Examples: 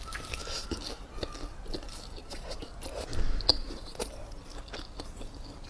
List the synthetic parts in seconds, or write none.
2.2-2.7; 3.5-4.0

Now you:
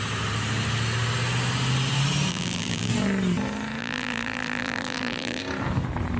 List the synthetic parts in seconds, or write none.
2.3-2.9; 3.8-5.4

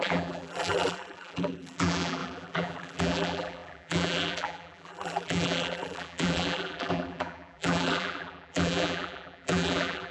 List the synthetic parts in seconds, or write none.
0.0-10.1

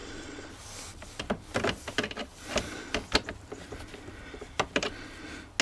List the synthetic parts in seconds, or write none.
0.0-0.5

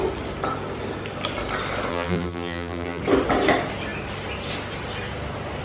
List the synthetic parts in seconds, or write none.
1.9-3.0

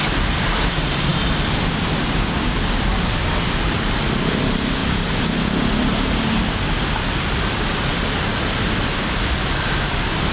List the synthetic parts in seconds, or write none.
1.1-3.1

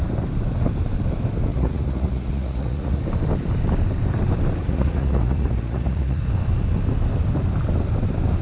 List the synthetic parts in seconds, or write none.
1.5-3.0; 4.6-6.2